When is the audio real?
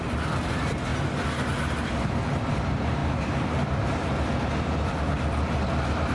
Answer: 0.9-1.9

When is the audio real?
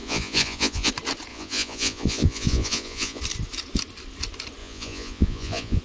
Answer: 0.9-1.3; 3.2-4.6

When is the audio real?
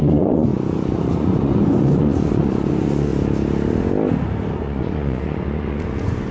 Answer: 3.1-4.5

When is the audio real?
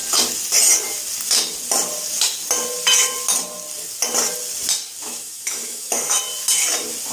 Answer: 0.0-5.0; 6.2-7.1